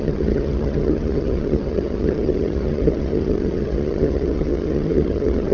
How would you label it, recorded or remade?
remade